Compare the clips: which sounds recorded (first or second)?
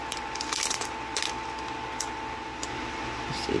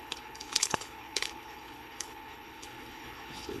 first